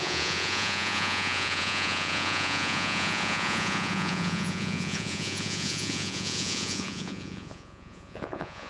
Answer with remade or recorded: remade